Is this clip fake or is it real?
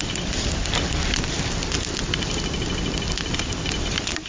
real